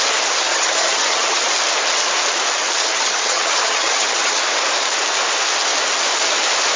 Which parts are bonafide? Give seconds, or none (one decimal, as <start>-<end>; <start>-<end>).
0.0-0.5; 1.4-2.8; 4.4-6.8

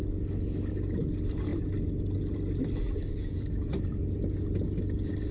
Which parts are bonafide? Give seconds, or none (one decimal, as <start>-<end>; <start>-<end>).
0.0-5.3

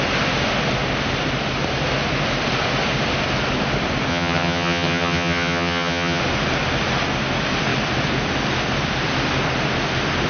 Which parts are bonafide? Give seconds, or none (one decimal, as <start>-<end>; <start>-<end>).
0.0-4.1; 6.2-10.3

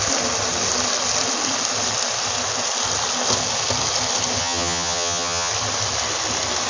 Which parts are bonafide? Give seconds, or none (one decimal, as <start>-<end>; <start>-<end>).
0.0-4.4; 5.5-6.7

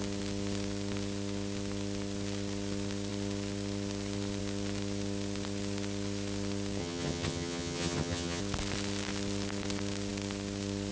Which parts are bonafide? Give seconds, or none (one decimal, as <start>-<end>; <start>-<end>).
0.0-6.8; 8.4-10.9